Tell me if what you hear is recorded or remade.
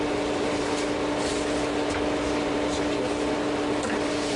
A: recorded